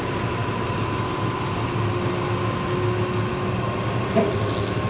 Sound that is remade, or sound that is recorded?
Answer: recorded